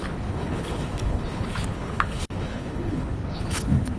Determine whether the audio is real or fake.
fake